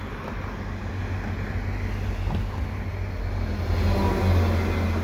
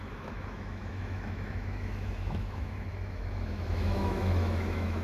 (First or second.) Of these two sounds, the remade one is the second